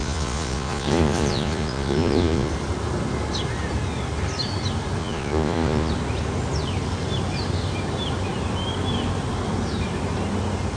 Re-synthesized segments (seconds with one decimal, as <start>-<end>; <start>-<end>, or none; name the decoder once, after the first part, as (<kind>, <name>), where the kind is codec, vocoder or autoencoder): 0.0-2.5 (vocoder, Vocos); 5.0-5.9